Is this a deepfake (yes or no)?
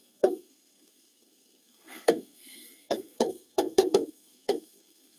yes